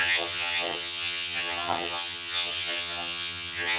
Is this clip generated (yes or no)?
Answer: yes